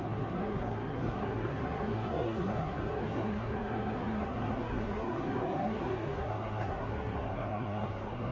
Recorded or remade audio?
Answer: remade